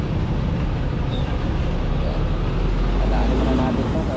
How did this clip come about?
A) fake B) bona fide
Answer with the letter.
B